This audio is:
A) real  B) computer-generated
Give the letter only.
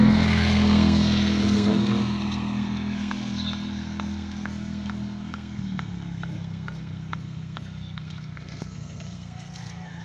B